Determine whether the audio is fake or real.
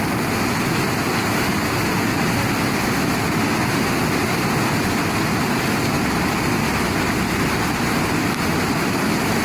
real